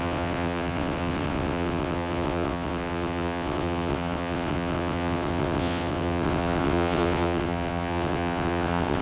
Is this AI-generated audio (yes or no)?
yes